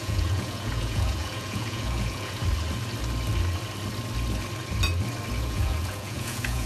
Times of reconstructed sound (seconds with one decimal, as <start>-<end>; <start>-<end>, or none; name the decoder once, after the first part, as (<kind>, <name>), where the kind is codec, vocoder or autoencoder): 0.0-2.4 (vocoder, Vocos); 5.4-6.7